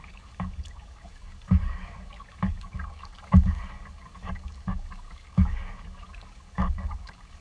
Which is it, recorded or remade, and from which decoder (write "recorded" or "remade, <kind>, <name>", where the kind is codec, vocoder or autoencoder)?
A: remade, codec, DAC